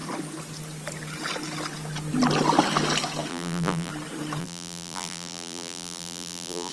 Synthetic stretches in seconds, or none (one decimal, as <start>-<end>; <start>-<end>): 3.3-3.9; 4.4-6.7